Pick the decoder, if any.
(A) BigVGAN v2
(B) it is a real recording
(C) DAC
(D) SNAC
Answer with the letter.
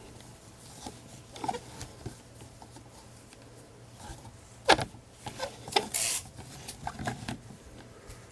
B